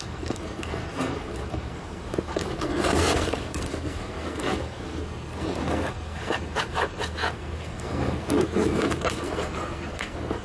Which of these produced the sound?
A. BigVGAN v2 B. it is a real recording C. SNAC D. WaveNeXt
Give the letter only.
C